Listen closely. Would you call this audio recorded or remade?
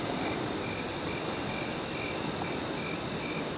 recorded